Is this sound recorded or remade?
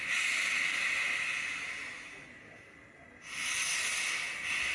recorded